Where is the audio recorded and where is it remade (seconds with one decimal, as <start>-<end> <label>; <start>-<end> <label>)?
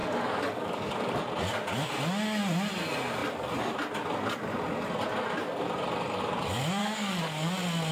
0.0-1.2 remade; 1.2-6.8 recorded; 6.8-7.5 remade; 7.5-7.9 recorded